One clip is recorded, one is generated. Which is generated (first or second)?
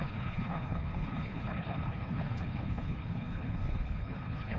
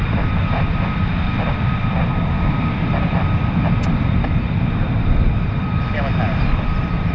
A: first